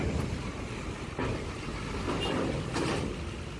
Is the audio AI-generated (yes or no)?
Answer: no